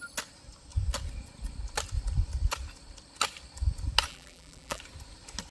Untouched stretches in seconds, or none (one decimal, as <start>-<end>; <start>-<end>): 0.0-4.1; 4.8-5.5